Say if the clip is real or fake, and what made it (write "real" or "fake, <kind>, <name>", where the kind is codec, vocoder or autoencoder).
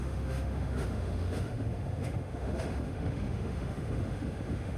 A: fake, autoencoder, DAC-VAE